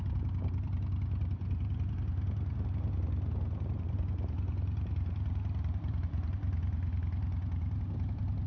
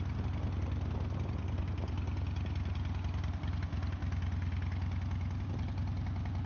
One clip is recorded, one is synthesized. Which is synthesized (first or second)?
first